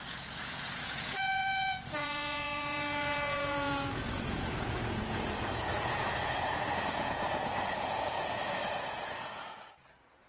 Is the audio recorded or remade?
remade